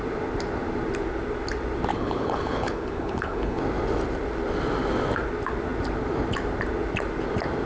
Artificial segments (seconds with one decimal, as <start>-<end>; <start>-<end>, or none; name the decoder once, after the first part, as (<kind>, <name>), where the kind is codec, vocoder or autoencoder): 1.9-3.6 (codec, HILCodec)